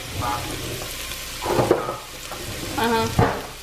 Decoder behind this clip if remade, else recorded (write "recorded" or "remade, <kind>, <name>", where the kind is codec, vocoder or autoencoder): recorded